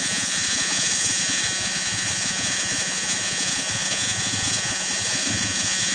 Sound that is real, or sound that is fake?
fake